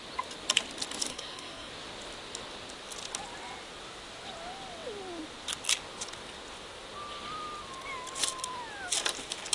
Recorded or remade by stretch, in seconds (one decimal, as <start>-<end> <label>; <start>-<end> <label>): 0.0-1.1 recorded; 1.1-1.7 remade; 1.7-9.5 recorded